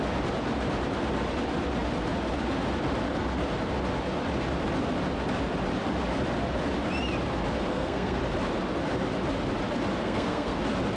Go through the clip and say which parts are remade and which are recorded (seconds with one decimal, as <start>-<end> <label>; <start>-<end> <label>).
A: 0.0-7.7 recorded; 7.7-8.2 remade; 8.2-10.0 recorded; 10.0-10.6 remade; 10.6-11.0 recorded